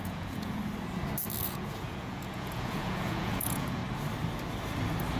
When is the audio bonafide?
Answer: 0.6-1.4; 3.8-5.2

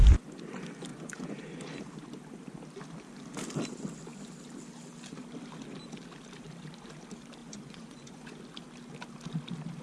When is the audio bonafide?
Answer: 0.0-0.9; 1.6-7.4; 8.4-9.8

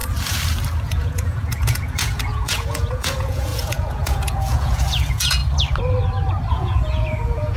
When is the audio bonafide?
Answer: 0.0-0.8; 5.4-6.5

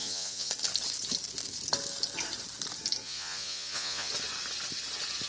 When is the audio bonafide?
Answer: 0.5-3.0; 4.1-5.3

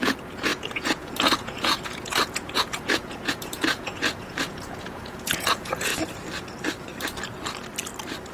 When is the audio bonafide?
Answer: 5.9-8.3

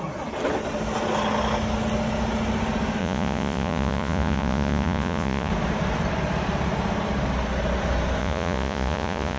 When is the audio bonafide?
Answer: 0.0-3.0; 5.5-8.2

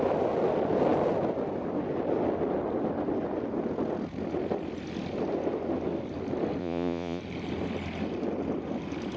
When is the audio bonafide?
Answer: 0.0-6.6; 7.2-9.2

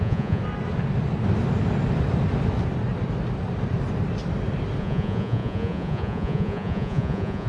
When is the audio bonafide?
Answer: 0.4-4.8